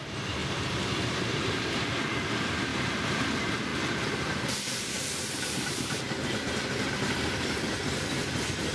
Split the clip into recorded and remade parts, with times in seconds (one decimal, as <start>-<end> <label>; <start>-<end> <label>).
0.0-0.4 recorded; 0.4-1.9 remade; 1.9-2.7 recorded; 2.7-3.3 remade; 3.3-3.7 recorded; 3.7-6.0 remade; 6.0-8.7 recorded